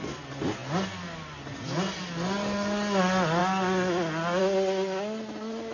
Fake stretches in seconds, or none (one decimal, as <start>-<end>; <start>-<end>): none